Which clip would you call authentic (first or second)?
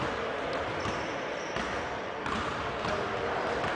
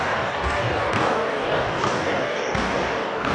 first